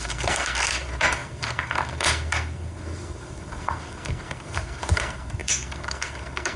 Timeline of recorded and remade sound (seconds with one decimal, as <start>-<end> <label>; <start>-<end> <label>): 0.0-6.6 remade